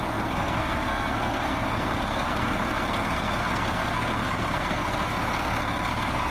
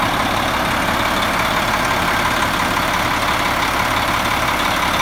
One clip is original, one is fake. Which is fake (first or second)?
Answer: first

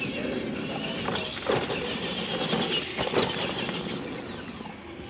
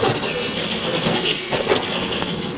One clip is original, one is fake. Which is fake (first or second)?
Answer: second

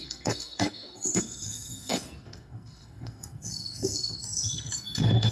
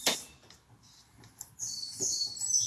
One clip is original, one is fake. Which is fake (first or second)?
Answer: first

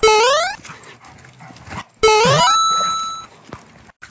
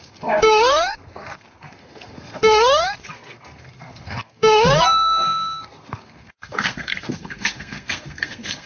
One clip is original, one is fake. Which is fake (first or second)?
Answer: second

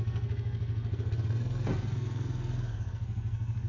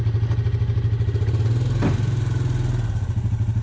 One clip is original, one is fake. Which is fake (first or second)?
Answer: first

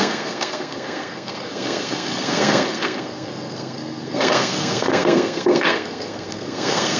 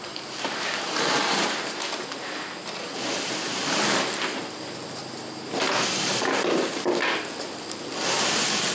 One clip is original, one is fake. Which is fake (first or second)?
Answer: first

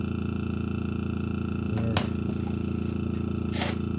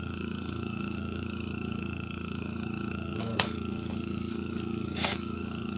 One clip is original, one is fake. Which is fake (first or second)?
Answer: second